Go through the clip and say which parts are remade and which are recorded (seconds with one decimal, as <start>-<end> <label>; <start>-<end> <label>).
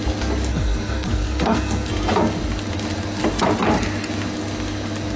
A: 0.0-0.5 recorded; 0.5-1.9 remade; 1.9-5.2 recorded